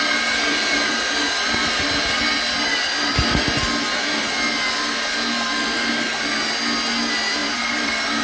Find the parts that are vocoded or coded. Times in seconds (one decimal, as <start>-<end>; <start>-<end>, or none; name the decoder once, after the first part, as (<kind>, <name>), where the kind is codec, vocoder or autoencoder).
7.4-8.2 (vocoder, BigVGAN v2)